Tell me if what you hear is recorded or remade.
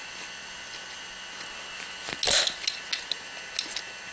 recorded